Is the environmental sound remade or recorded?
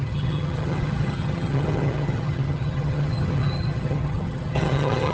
remade